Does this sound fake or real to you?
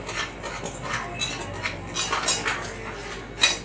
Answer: real